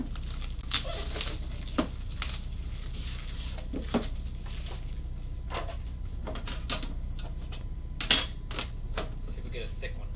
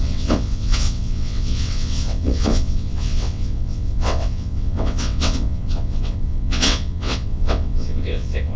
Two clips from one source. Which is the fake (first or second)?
second